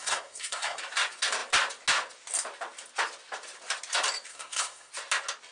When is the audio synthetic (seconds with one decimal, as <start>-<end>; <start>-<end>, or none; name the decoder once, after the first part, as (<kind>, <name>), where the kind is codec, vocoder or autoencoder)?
0.0-0.8 (codec, SNAC); 4.3-4.9